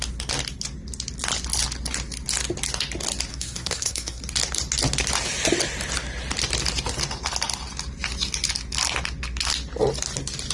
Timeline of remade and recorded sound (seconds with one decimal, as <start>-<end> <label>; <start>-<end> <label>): 0.0-3.3 recorded; 3.3-4.2 remade; 4.2-10.5 recorded